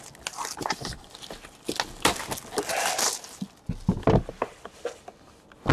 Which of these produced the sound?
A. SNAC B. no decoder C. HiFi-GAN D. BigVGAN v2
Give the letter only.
B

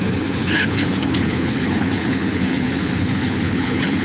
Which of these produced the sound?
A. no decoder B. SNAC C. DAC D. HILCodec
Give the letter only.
D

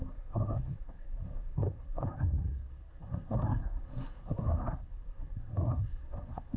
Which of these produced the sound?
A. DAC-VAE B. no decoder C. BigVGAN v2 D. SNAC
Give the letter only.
D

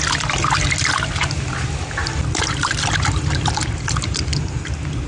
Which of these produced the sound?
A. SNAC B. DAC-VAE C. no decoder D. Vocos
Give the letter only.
C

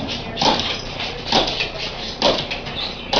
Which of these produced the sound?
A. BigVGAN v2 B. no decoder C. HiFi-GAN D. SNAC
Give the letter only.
B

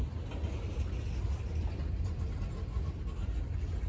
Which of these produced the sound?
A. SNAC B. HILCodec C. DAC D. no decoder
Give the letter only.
D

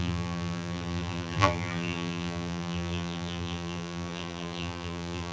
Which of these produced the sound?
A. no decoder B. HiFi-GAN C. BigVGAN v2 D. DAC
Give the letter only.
C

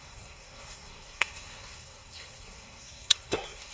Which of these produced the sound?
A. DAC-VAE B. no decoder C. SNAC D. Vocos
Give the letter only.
C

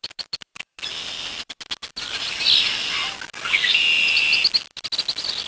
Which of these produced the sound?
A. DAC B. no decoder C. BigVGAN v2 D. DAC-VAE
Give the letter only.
B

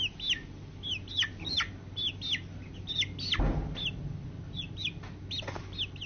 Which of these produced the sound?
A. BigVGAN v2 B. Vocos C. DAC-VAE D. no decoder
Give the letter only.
D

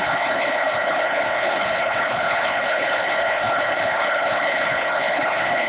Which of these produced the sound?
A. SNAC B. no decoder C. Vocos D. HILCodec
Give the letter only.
D